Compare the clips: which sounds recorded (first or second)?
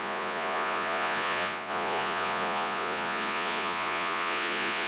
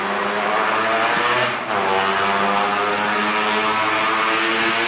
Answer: second